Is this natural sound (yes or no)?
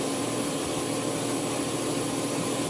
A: no